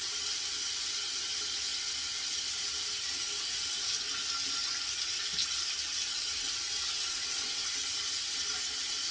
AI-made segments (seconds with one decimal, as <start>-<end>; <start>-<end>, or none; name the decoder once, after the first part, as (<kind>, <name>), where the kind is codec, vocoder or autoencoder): 0.0-0.5 (vocoder, BigVGAN v2)

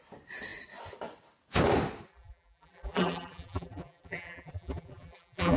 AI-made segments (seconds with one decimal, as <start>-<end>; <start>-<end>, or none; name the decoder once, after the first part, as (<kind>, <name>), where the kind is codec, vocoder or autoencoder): 2.1-5.6 (vocoder, BigVGAN v2)

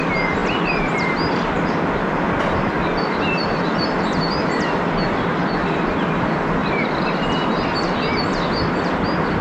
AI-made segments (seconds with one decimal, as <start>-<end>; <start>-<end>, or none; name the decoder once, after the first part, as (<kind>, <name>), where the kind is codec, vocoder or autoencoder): none

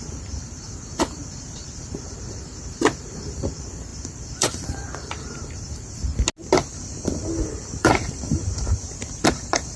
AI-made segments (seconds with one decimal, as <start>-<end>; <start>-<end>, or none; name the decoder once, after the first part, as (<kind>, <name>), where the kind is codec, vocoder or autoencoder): 0.0-6.1 (vocoder, BigVGAN v2); 6.7-9.8

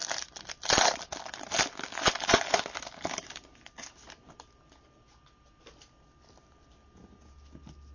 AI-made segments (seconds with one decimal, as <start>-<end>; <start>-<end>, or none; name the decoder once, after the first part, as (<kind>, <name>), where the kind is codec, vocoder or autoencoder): none

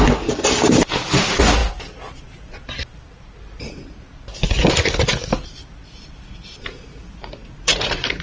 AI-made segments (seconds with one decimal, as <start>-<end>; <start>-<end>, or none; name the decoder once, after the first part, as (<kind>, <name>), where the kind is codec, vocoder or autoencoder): 7.4-8.2 (vocoder, Vocos)